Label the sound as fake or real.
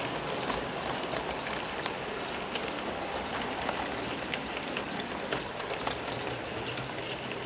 real